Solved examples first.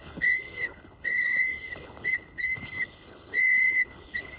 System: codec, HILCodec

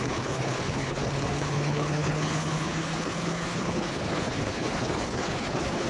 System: codec, HILCodec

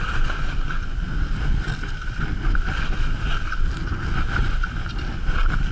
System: none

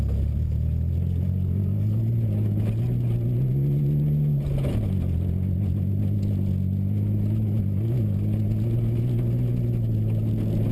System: none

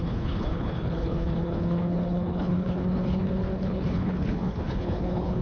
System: codec, HILCodec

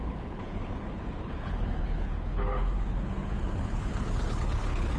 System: codec, HILCodec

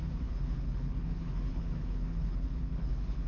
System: codec, HILCodec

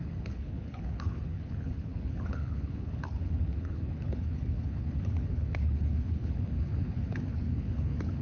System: codec, HILCodec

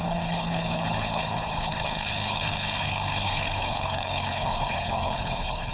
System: codec, HILCodec